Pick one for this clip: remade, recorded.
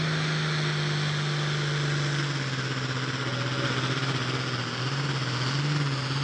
recorded